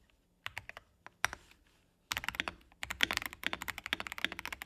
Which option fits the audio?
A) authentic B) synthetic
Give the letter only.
A